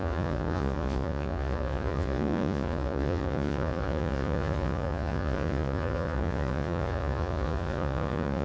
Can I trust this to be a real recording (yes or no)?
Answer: no